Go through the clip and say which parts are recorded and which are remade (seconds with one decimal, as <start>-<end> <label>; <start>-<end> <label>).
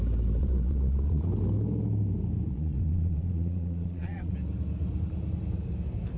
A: 0.0-0.4 recorded; 0.4-1.3 remade; 1.3-2.5 recorded; 2.5-4.3 remade; 4.3-6.2 recorded